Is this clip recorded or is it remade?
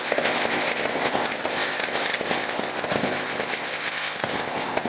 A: remade